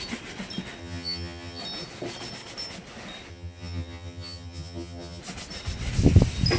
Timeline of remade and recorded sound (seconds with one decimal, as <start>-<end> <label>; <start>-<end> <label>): 0.0-0.8 recorded; 0.8-1.6 remade; 1.6-3.3 recorded; 3.3-5.2 remade; 5.2-6.6 recorded